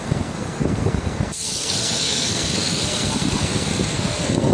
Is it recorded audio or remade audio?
remade